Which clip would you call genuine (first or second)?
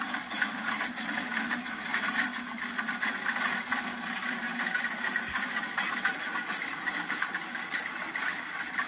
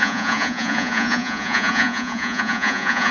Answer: first